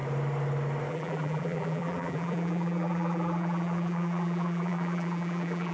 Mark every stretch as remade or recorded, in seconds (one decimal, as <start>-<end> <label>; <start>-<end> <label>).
0.0-0.9 recorded; 0.9-5.7 remade